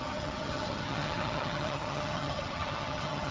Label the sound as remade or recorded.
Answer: remade